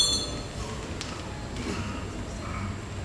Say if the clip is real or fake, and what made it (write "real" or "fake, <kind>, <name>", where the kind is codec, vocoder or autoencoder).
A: real